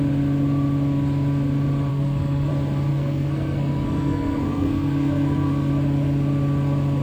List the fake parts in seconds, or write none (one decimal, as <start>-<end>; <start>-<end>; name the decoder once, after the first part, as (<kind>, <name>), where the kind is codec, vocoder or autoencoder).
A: 1.9-2.5 (codec, SNAC); 2.9-5.7